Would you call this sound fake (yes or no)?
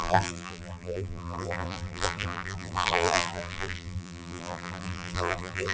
yes